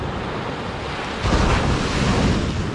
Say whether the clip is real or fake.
real